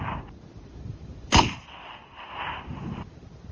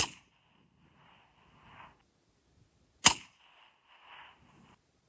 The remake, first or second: first